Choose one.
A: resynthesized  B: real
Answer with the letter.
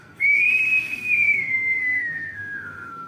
A